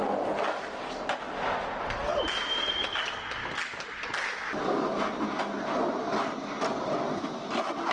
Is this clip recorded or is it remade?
recorded